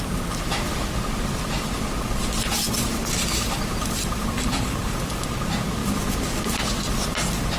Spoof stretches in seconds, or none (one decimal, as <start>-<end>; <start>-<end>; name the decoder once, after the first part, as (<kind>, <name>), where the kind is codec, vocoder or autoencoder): 3.8-5.1 (vocoder, BigVGAN v2)